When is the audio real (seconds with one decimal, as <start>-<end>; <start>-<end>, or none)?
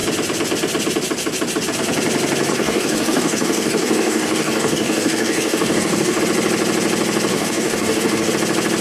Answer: 0.0-2.5; 6.2-7.3; 8.3-8.8